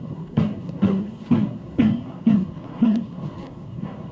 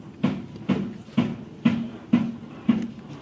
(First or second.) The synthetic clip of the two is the first